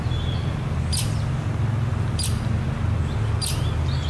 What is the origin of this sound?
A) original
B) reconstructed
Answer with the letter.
A